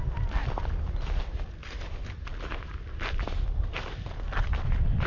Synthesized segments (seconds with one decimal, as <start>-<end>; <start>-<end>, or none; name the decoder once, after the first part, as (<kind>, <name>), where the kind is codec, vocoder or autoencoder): none